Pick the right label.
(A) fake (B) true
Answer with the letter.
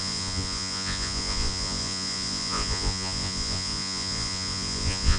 A